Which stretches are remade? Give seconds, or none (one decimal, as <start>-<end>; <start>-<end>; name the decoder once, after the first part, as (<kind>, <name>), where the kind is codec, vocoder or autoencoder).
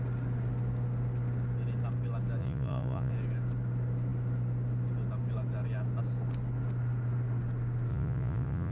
2.4-3.1 (vocoder, Vocos); 7.9-8.7